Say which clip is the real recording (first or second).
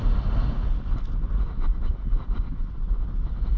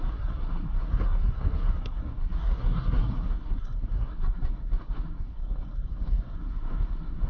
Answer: first